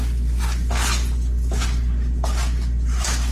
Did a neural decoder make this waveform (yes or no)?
no